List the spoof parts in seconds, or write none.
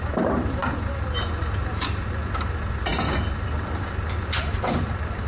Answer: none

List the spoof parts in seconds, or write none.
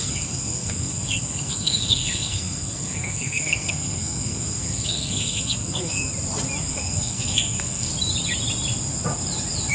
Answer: 0.0-6.1 (codec, SNAC); 6.7-7.9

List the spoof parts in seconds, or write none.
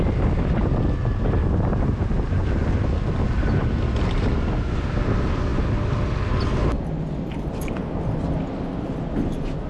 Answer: none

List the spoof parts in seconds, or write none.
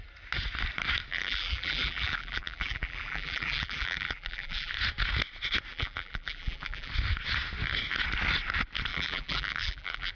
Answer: 1.1-4.7 (vocoder, BigVGAN v2); 5.7-6.9; 8.9-10.1